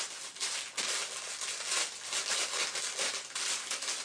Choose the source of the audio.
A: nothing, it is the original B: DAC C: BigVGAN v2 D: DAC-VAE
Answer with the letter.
A